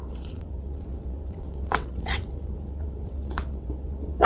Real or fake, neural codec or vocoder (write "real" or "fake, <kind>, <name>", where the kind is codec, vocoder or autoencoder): fake, vocoder, WaveNeXt